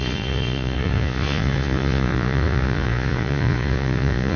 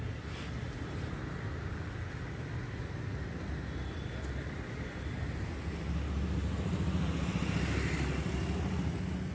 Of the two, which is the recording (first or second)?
second